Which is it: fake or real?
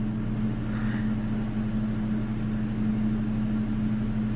real